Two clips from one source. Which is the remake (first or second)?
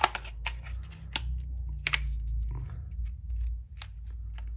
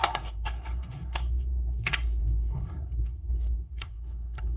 second